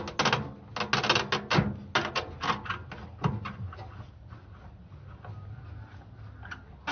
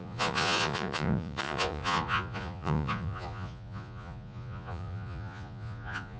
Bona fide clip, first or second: first